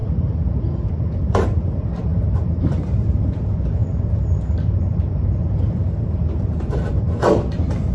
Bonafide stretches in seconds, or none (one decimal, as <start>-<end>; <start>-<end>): 0.0-0.9; 2.1-2.6